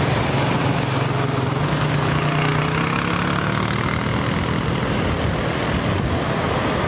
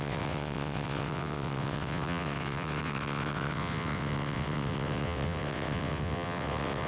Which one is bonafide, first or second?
first